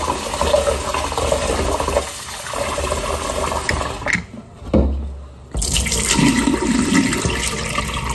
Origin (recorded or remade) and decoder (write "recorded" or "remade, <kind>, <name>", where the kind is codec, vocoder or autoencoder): recorded